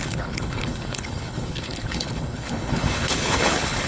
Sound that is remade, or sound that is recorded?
remade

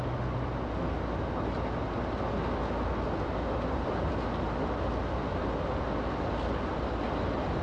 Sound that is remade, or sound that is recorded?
recorded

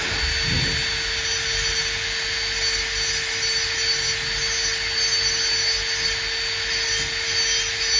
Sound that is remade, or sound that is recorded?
recorded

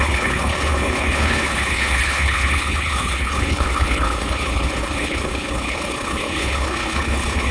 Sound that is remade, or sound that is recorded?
remade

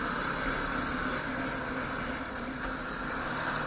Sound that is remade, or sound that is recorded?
recorded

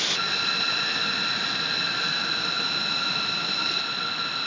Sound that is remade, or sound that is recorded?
recorded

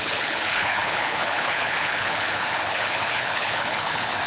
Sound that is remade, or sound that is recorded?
remade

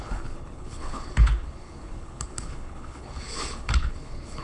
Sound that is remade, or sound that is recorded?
remade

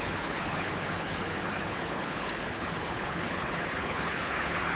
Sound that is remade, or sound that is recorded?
remade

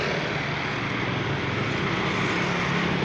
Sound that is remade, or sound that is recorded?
recorded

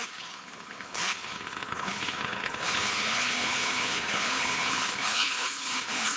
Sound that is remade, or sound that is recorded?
remade